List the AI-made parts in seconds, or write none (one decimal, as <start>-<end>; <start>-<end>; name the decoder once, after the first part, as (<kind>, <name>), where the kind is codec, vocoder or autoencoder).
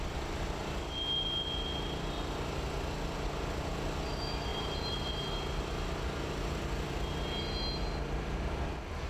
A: 4.5-5.3 (vocoder, BigVGAN v2)